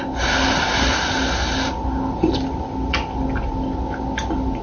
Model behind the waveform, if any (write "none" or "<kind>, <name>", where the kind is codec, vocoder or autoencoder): none